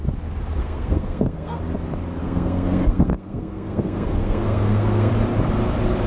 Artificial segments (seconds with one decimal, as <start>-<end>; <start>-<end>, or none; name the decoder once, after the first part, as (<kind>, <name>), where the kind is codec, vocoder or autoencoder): 0.6-1.6 (codec, SNAC); 2.2-5.1